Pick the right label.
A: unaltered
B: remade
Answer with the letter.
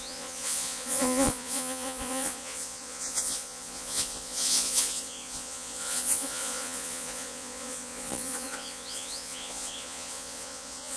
B